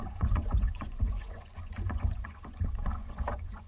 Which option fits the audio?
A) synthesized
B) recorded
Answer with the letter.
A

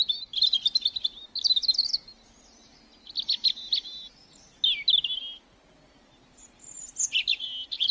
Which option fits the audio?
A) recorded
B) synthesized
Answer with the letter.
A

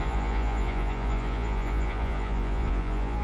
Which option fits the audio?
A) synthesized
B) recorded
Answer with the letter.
A